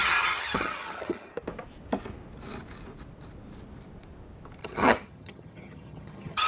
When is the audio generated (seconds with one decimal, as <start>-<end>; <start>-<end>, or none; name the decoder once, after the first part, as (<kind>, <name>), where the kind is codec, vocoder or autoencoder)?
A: 0.0-1.3 (vocoder, HiFi-GAN); 4.6-6.5